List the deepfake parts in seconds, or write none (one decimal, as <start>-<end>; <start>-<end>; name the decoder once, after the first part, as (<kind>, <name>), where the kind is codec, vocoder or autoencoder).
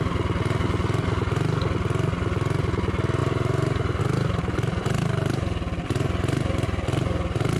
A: 3.2-4.0 (vocoder, BigVGAN v2)